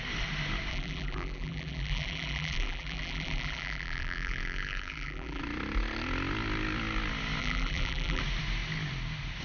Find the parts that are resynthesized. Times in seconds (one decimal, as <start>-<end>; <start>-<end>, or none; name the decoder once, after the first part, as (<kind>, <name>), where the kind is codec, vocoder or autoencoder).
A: 0.7-5.4 (vocoder, BigVGAN v2); 7.4-8.2